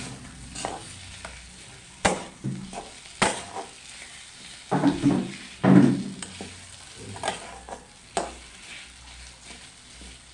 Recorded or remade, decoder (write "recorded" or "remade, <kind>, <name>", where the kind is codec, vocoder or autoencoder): recorded